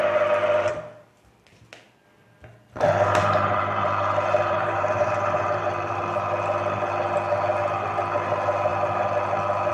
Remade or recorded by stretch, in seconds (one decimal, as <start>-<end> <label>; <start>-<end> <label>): 0.0-3.2 recorded; 3.2-6.0 remade; 6.0-9.7 recorded